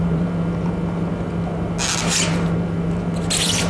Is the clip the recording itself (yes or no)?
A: yes